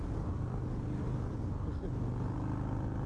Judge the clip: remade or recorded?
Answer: recorded